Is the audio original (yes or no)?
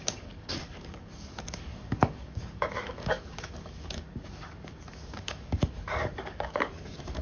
no